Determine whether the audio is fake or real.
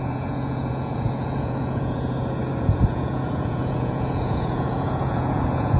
fake